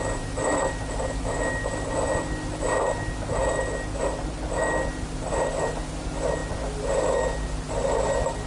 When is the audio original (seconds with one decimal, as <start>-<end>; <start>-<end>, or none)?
0.0-8.5